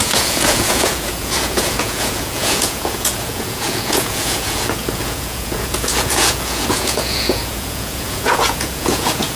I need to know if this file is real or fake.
fake